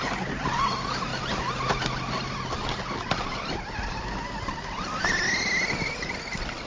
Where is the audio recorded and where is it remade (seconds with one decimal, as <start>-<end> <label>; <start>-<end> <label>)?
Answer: 0.0-6.7 recorded